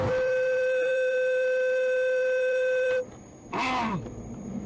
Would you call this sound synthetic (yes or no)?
yes